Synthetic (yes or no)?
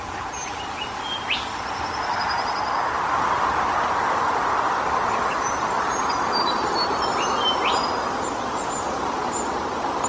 no